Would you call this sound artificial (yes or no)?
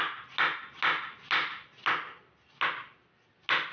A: no